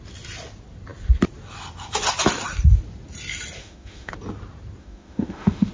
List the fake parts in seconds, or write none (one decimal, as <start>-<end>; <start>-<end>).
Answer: 3.6-4.1; 4.8-5.7